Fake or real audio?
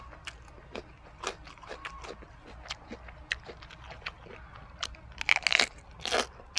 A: real